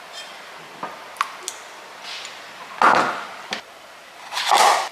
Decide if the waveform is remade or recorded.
recorded